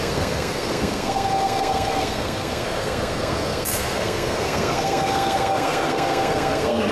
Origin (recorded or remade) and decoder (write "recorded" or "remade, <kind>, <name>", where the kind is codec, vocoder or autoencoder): remade, codec, SNAC